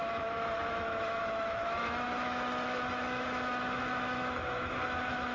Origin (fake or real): fake